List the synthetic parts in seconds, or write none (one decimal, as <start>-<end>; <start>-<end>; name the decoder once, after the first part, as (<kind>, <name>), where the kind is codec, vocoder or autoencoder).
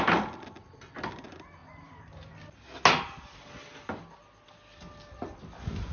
none